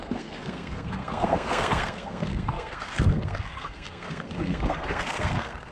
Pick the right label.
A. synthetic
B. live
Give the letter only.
A